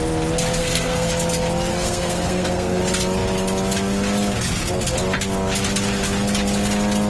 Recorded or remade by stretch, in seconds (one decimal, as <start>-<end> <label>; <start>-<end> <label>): 0.0-0.6 recorded; 0.6-1.1 remade; 1.1-1.7 recorded; 1.7-2.8 remade; 2.8-7.1 recorded